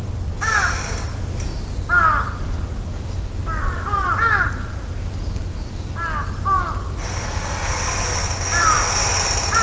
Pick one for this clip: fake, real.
real